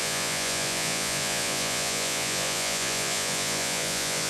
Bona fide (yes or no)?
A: no